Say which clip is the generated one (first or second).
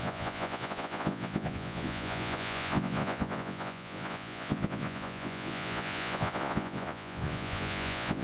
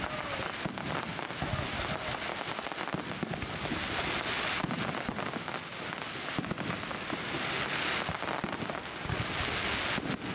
first